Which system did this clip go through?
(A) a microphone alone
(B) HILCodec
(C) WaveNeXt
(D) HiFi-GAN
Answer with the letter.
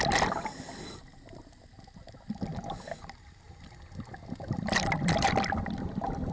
A